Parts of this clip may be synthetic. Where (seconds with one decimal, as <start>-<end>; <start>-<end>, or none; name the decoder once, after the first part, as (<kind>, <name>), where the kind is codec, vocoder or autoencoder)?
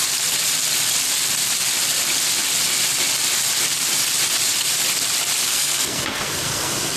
5.4-7.0 (codec, SNAC)